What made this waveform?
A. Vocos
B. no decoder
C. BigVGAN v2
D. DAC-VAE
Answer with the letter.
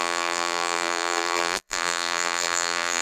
C